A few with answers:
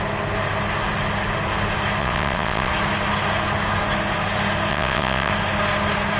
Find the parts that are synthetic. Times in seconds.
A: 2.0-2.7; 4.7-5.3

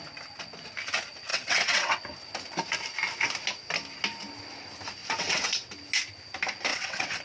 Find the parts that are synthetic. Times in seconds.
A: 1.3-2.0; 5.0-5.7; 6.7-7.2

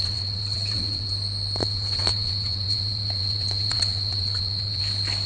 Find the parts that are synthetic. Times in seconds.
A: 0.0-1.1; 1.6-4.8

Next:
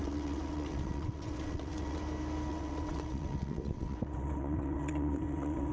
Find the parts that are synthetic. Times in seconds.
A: 0.0-2.0; 2.5-5.7

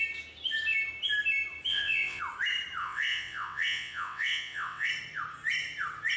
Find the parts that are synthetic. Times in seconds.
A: 1.7-2.2; 2.8-4.9

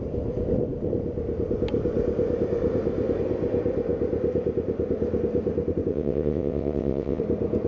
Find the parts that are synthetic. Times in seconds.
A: 5.9-7.2